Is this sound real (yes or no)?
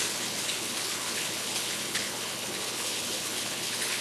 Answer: no